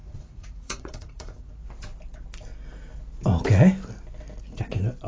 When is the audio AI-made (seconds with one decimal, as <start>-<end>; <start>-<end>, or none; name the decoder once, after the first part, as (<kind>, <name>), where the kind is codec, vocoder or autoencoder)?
0.0-1.7 (vocoder, Vocos)